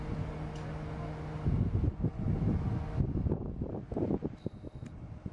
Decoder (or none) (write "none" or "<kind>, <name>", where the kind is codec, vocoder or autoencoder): none